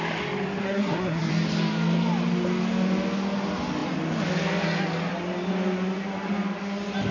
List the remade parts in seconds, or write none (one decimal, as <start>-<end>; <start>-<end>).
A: 0.6-1.3